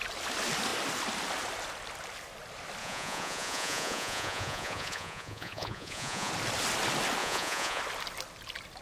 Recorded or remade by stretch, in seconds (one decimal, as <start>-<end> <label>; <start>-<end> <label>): 0.0-2.8 recorded; 2.8-6.3 remade; 6.3-7.2 recorded; 7.2-7.8 remade; 7.8-8.8 recorded